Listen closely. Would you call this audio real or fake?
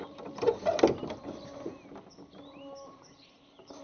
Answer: real